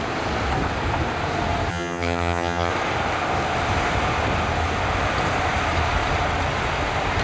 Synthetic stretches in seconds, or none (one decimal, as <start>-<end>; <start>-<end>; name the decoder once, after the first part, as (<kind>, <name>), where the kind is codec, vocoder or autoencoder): 1.7-2.7 (vocoder, HiFi-GAN)